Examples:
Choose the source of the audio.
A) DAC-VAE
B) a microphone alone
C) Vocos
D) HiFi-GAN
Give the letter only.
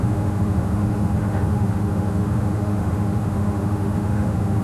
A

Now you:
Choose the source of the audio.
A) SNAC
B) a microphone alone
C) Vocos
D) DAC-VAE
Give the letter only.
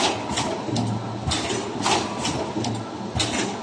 B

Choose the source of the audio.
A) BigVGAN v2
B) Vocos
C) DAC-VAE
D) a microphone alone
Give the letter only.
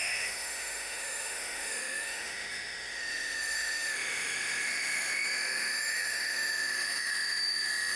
C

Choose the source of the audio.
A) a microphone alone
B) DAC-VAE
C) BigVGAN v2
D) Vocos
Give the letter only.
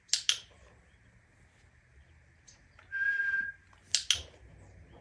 A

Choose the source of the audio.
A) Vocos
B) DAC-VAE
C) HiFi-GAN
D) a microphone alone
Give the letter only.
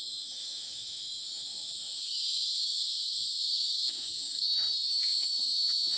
B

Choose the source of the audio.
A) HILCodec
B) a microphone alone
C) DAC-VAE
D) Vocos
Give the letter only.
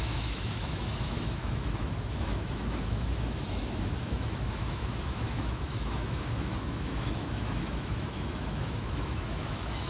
C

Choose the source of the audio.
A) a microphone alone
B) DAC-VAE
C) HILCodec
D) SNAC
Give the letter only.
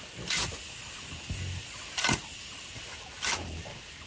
A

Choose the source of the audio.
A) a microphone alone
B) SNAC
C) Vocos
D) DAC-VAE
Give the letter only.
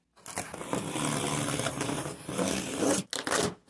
A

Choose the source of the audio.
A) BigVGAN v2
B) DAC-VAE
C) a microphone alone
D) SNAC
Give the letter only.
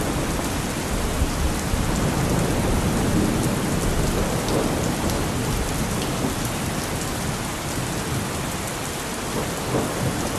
C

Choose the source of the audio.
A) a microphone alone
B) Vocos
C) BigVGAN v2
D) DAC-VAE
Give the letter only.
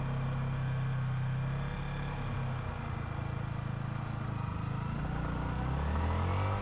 A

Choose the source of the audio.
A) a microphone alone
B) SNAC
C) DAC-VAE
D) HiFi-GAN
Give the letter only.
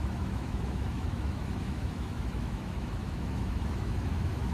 C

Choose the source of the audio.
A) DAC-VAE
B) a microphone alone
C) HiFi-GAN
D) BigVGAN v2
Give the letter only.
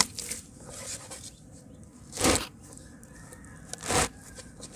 B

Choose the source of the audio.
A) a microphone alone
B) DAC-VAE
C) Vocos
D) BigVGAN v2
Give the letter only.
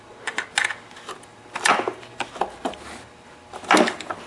A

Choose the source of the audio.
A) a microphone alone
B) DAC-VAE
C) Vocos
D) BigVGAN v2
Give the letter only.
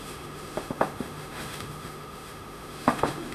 B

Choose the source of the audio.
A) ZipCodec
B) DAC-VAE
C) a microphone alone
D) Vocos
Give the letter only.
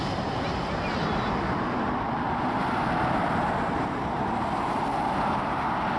C